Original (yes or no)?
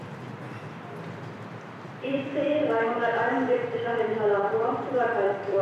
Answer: no